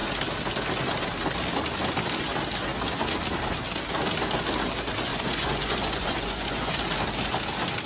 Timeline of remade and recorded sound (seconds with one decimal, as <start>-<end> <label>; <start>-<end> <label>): 0.0-5.1 recorded; 5.1-6.8 remade; 6.8-7.9 recorded